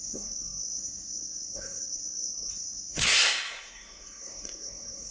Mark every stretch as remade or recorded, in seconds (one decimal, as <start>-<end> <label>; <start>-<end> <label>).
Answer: 0.0-5.1 remade